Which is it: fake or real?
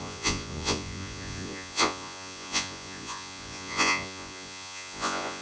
fake